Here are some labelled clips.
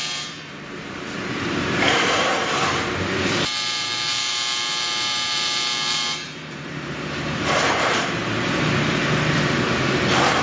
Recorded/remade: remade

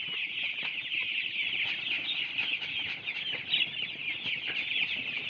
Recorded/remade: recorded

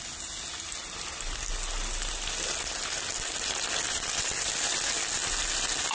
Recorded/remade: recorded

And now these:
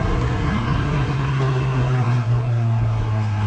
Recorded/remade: remade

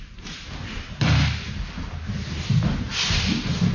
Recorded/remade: recorded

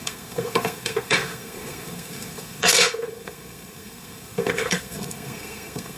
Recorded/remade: remade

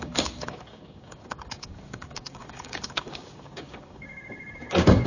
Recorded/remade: remade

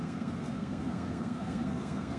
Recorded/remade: remade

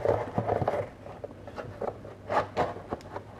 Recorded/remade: recorded